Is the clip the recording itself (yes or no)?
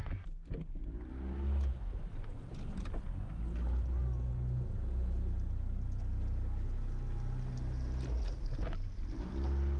yes